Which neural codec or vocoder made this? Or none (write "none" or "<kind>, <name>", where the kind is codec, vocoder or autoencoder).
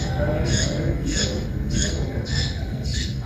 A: codec, SNAC